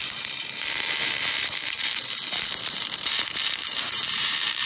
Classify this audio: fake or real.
fake